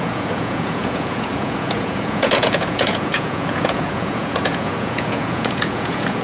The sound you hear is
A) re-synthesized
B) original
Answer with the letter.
A